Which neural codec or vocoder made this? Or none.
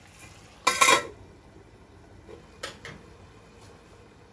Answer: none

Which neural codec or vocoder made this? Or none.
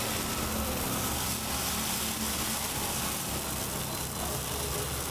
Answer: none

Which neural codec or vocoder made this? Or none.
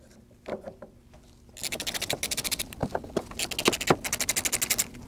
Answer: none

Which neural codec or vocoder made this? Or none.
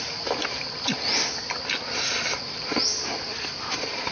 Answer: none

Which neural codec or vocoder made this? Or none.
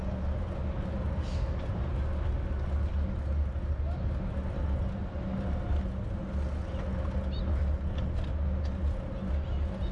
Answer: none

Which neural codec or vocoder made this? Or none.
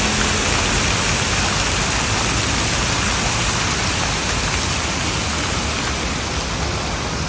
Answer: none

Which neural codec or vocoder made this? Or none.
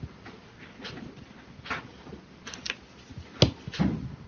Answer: none